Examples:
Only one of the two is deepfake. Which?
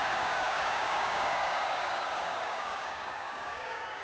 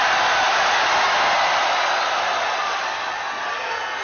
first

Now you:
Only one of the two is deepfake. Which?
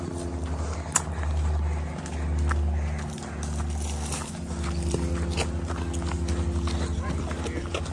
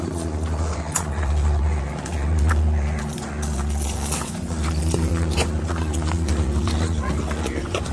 second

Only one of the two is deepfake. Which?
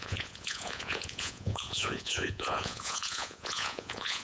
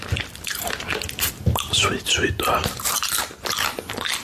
first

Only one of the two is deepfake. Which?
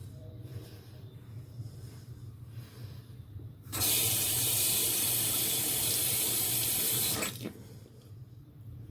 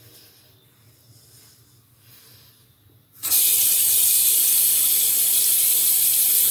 first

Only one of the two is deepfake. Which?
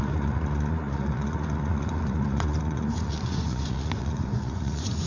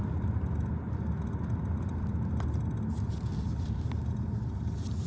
first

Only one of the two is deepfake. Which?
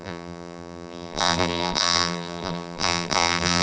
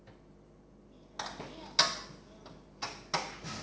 first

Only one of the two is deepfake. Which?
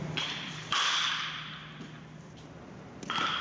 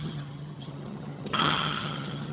second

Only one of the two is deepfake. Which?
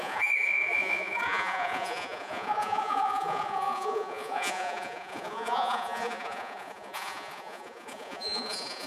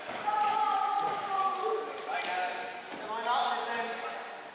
first